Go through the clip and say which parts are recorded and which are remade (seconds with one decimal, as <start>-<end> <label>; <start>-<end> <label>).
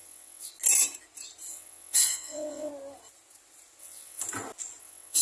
0.0-0.5 remade; 0.5-1.5 recorded; 1.5-2.7 remade; 2.7-3.8 recorded; 3.8-4.2 remade; 4.2-4.8 recorded; 4.8-5.2 remade